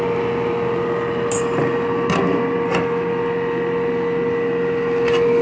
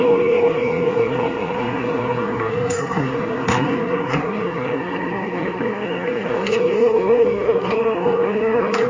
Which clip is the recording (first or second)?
first